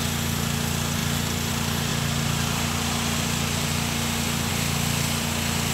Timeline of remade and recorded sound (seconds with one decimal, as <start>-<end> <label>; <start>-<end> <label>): 0.0-1.0 remade; 1.0-1.5 recorded; 1.5-5.7 remade